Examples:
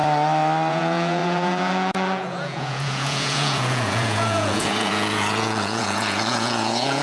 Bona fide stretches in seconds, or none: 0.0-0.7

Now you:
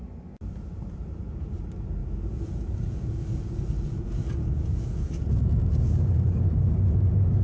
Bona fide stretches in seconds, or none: 0.0-2.0; 6.4-7.4

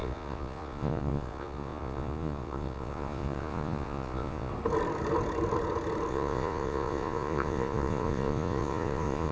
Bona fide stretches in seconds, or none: 4.5-6.1

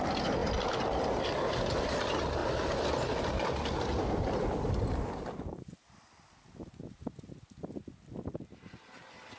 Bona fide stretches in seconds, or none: 0.0-9.4

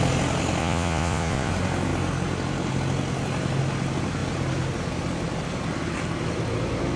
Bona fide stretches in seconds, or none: 0.0-0.6; 1.5-7.0

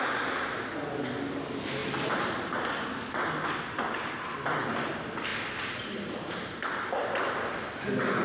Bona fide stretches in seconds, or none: 0.0-8.2